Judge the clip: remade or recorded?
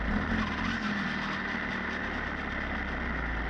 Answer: recorded